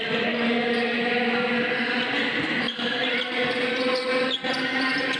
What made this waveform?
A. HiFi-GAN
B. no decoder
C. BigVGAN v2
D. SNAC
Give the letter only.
B